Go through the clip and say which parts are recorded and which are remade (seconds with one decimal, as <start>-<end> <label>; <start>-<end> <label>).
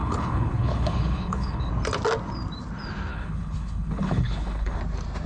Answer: 0.0-1.7 remade; 1.7-3.1 recorded; 3.1-4.8 remade; 4.8-5.3 recorded